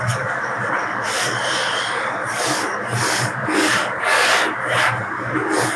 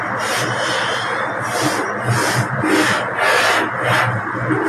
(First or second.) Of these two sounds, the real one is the second